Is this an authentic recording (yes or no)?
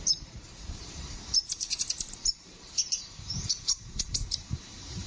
no